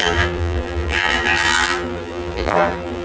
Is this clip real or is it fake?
fake